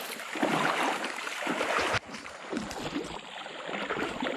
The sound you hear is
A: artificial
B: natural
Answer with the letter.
B